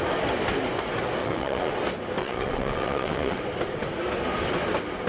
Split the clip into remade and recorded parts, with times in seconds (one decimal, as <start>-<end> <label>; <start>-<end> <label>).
0.0-1.2 recorded; 1.2-1.7 remade; 1.7-2.2 recorded; 2.2-3.4 remade; 3.4-5.1 recorded